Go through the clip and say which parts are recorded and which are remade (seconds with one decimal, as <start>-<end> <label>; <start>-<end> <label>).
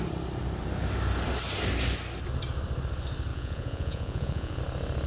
0.0-3.3 recorded; 3.3-4.6 remade; 4.6-5.1 recorded